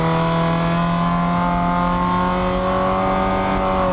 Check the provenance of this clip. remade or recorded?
recorded